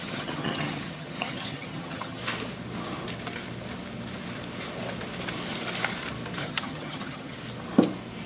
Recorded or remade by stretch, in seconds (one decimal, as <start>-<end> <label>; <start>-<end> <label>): 0.0-2.2 remade; 2.2-6.4 recorded; 6.4-7.3 remade; 7.3-8.3 recorded